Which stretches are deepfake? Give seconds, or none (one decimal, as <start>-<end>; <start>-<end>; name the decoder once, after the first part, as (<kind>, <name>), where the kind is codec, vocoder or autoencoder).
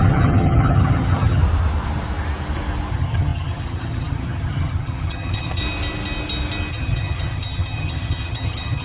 0.0-1.4 (vocoder, HiFi-GAN); 2.9-5.6; 6.7-8.8